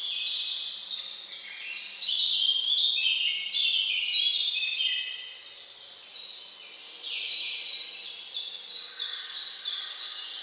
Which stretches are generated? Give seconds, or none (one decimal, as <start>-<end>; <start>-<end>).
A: 4.6-5.9; 6.8-9.7